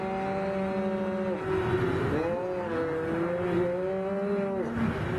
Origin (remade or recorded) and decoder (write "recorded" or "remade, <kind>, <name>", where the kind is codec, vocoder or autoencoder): recorded